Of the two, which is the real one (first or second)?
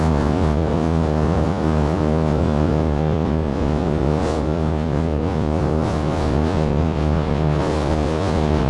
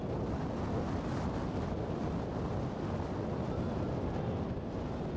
second